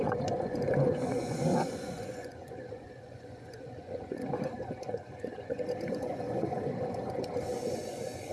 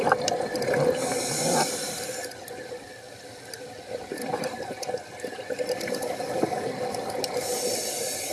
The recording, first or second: second